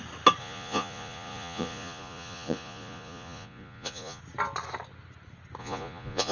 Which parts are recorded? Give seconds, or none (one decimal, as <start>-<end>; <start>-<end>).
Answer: 0.0-0.4; 4.2-5.6